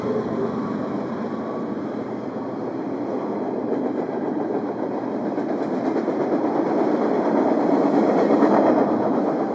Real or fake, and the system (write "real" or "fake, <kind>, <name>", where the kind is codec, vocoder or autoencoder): real